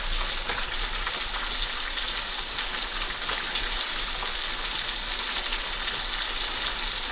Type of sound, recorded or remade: recorded